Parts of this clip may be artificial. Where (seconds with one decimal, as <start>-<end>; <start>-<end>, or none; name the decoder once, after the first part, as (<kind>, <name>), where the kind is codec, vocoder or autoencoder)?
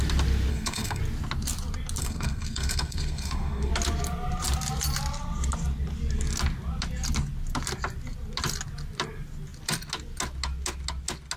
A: 0.5-1.0 (codec, SNAC); 2.0-3.7